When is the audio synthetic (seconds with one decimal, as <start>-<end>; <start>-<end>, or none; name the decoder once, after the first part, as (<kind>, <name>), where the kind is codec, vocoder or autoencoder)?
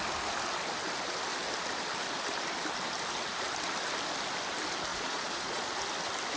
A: 4.9-5.7 (vocoder, Vocos)